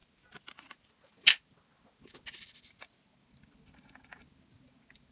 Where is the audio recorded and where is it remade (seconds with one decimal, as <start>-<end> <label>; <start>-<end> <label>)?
0.0-5.1 recorded